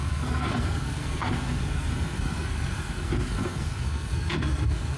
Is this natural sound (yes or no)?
no